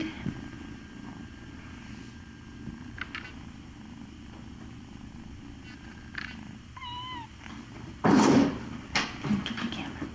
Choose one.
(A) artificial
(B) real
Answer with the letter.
B